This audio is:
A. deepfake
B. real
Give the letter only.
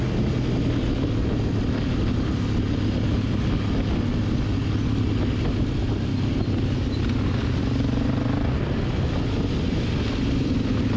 B